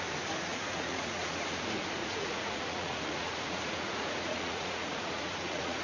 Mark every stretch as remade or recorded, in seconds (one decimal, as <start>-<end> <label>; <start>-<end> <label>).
0.0-0.5 recorded; 0.5-1.6 remade; 1.6-2.0 recorded; 2.0-5.8 remade